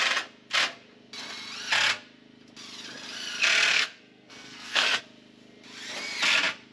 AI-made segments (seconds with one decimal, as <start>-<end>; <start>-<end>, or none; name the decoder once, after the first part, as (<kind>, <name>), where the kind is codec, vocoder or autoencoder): 3.7-5.0 (codec, SNAC)